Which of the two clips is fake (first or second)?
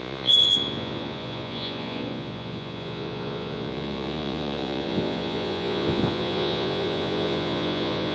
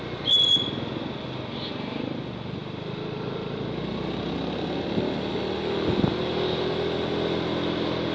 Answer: first